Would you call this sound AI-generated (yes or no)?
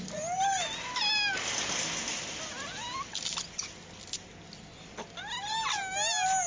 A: no